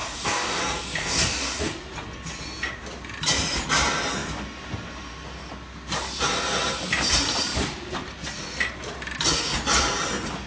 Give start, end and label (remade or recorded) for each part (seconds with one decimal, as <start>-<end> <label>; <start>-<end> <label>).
0.0-0.6 remade; 0.6-1.0 recorded; 1.0-1.6 remade; 1.6-10.5 recorded